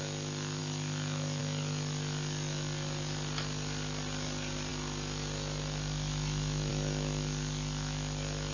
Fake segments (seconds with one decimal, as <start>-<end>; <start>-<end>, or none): none